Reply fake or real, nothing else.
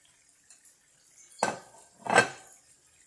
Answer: real